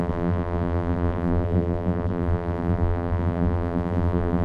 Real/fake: fake